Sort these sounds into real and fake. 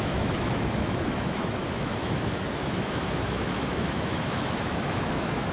fake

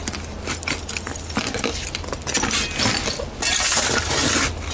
real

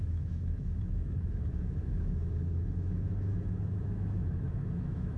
fake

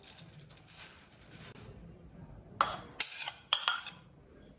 real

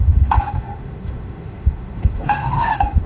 fake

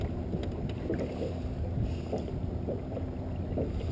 real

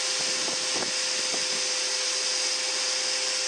real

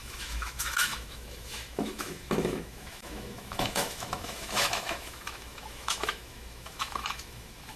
fake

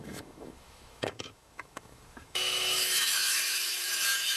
fake